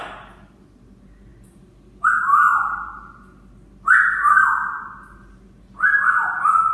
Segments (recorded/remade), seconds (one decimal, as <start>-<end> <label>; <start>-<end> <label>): 0.0-6.7 recorded